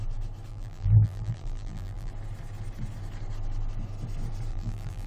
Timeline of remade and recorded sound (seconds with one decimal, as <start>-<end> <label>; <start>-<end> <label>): 0.0-0.5 recorded; 0.5-2.1 remade; 2.1-4.5 recorded; 4.5-5.1 remade